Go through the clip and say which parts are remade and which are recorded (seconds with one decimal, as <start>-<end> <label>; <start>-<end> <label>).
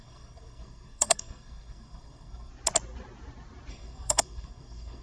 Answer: 0.0-2.5 remade; 2.5-3.7 recorded; 3.7-5.0 remade